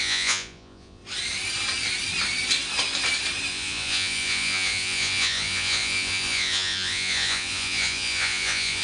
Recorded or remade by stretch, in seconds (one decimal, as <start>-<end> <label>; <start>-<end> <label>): 0.0-1.0 remade; 1.0-3.5 recorded; 3.5-8.8 remade